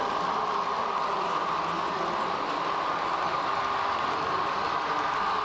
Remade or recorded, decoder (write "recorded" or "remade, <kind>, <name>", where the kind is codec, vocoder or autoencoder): recorded